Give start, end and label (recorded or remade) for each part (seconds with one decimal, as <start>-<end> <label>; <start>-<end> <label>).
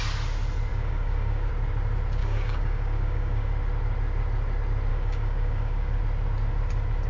0.0-0.7 recorded; 0.7-1.5 remade; 1.5-2.2 recorded; 2.2-3.5 remade; 3.5-4.9 recorded; 4.9-6.0 remade; 6.0-7.1 recorded